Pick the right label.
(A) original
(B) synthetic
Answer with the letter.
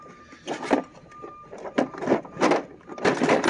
A